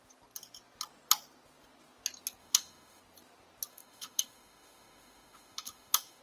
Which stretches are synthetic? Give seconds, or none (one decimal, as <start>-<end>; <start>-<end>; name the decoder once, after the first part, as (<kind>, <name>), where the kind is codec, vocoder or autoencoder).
2.4-3.0 (autoencoder, DAC-VAE); 3.7-6.2

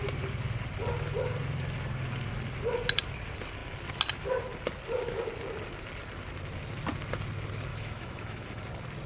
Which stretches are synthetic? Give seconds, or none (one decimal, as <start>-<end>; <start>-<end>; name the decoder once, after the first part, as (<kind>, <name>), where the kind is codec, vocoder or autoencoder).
7.7-8.6 (autoencoder, DAC-VAE)

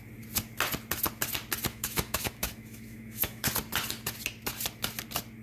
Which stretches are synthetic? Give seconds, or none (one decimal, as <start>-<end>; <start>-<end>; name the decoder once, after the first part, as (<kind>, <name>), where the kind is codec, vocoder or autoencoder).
1.7-3.5 (autoencoder, DAC-VAE)

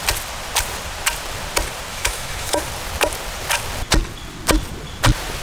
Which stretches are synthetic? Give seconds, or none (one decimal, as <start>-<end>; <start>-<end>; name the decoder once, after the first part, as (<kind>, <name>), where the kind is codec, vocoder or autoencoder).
1.9-2.6 (autoencoder, DAC-VAE)

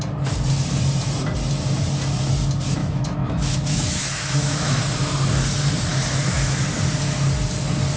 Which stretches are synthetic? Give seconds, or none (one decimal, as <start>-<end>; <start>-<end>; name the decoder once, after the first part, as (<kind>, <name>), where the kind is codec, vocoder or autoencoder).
2.8-4.8 (autoencoder, DAC-VAE); 5.9-6.6

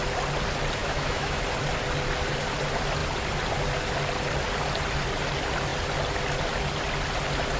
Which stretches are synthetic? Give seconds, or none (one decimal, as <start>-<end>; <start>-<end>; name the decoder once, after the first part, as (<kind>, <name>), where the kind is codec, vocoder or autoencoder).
0.8-1.4 (autoencoder, DAC-VAE)

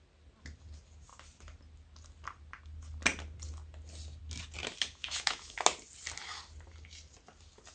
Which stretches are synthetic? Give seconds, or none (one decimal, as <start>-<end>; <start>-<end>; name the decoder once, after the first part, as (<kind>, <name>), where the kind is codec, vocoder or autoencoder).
5.0-5.6 (autoencoder, DAC-VAE)

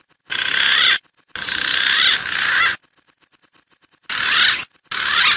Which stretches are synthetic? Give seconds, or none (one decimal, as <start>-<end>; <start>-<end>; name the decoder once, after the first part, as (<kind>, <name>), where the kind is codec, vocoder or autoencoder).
none